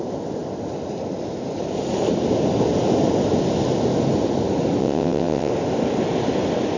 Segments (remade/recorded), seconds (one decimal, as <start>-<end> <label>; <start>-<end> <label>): 0.0-4.8 recorded; 4.8-5.5 remade; 5.5-6.8 recorded